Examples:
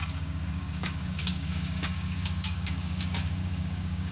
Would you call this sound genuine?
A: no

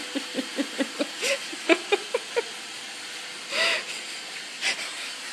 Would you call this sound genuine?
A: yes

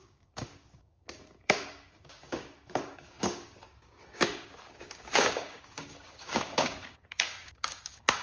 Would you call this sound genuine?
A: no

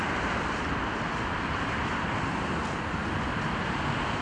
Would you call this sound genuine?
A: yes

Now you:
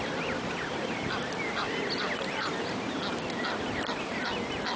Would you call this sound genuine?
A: yes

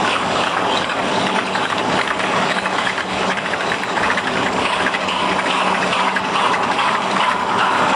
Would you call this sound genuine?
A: no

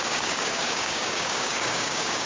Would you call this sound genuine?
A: no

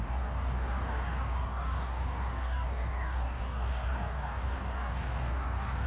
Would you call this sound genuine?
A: no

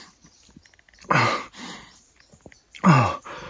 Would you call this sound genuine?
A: yes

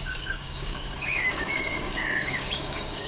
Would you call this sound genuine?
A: no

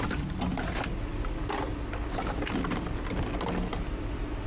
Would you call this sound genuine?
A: yes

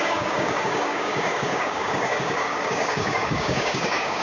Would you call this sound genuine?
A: no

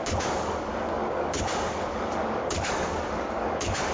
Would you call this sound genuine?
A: no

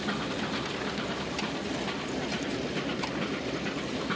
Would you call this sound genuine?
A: yes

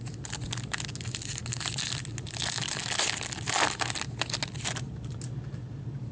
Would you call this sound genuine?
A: yes